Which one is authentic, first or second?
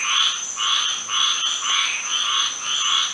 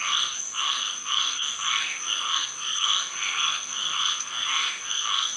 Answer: first